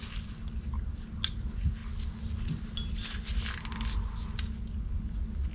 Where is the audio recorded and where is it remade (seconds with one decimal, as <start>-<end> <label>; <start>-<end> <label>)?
0.0-5.5 recorded